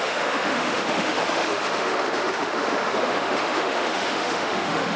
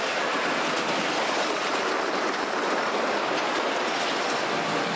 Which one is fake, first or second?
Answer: first